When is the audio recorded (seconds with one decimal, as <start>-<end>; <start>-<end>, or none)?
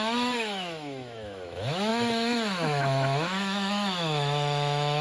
none